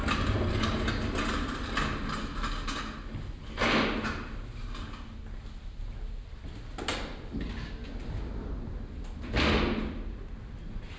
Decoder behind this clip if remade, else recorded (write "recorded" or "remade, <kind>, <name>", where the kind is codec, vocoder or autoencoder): recorded